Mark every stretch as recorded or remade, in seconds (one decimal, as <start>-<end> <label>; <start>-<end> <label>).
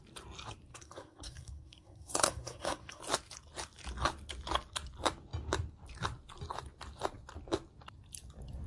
0.0-0.7 recorded; 0.7-3.0 remade; 3.0-8.7 recorded